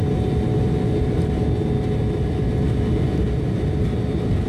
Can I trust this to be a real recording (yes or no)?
yes